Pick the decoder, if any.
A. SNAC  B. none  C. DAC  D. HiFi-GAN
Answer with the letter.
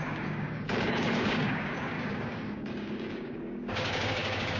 C